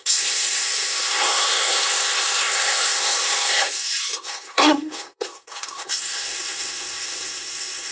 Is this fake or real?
fake